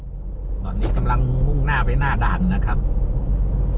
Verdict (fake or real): real